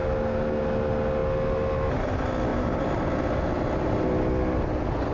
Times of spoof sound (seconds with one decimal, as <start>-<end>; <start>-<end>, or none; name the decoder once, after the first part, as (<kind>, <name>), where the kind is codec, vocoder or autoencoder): 2.5-3.1 (vocoder, BigVGAN v2)